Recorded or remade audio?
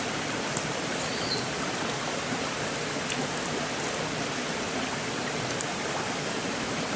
recorded